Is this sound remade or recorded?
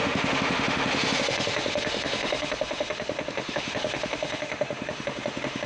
remade